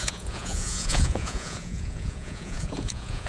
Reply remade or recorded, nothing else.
remade